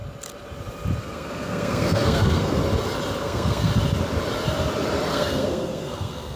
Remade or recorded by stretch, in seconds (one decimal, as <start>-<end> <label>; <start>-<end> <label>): 0.0-1.0 recorded; 1.0-2.6 remade; 2.6-3.2 recorded; 3.2-3.7 remade; 3.7-5.1 recorded; 5.1-6.4 remade

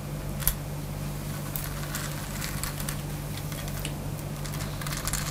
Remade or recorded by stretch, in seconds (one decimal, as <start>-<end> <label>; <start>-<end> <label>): 0.0-5.3 recorded

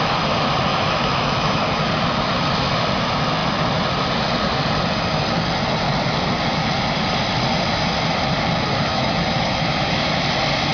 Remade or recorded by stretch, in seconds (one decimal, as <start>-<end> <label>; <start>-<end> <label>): 0.0-0.7 recorded; 0.7-1.6 remade; 1.6-8.9 recorded; 8.9-9.9 remade; 9.9-10.7 recorded

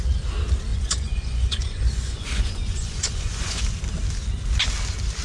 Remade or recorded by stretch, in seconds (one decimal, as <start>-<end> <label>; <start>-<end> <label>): 0.0-0.7 recorded; 0.7-3.6 remade; 3.6-5.2 recorded

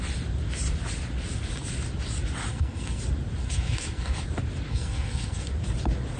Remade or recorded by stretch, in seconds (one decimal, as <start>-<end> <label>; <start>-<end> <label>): 0.0-2.5 recorded; 2.5-3.0 remade; 3.0-3.4 recorded; 3.4-4.2 remade; 4.2-4.7 recorded; 4.7-5.5 remade; 5.5-6.2 recorded

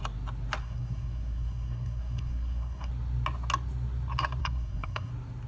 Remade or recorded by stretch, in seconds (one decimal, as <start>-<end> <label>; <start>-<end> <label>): 0.0-0.6 recorded; 0.6-2.9 remade; 2.9-4.4 recorded; 4.4-5.1 remade; 5.1-5.5 recorded

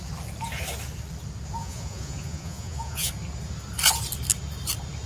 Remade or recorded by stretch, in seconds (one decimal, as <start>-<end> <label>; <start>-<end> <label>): 0.0-1.6 recorded; 1.6-3.1 remade; 3.1-5.1 recorded

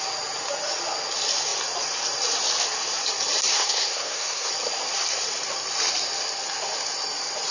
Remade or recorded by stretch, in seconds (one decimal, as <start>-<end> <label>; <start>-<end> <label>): 0.0-3.5 recorded; 3.5-4.5 remade; 4.5-7.5 recorded